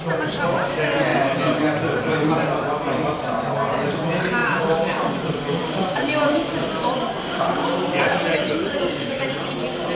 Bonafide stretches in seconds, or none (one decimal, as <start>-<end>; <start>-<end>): 0.0-1.1; 2.3-4.4; 8.8-9.9